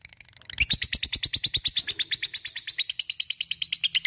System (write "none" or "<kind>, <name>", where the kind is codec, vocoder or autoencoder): none